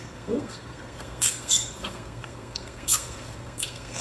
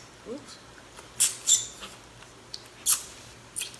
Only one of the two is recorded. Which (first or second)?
second